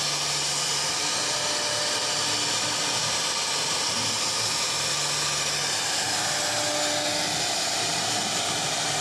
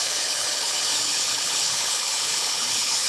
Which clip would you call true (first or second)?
first